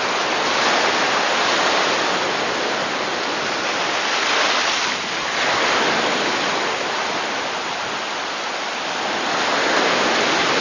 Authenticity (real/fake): real